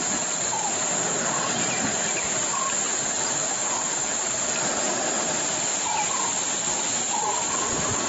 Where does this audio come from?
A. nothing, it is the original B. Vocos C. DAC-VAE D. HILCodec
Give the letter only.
A